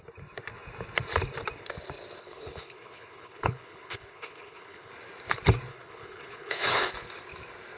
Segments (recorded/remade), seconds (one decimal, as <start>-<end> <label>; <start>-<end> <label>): 0.0-2.2 recorded; 2.2-4.9 remade; 4.9-5.7 recorded; 5.7-6.9 remade; 6.9-7.8 recorded